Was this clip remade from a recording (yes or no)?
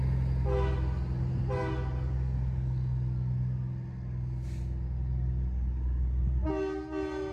no